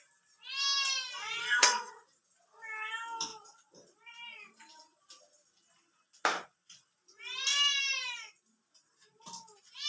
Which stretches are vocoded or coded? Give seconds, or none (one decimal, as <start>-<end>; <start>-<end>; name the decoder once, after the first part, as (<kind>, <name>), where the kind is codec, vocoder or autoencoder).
1.4-1.9 (codec, SNAC)